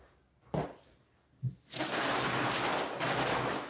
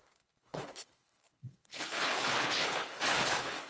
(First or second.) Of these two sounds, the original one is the first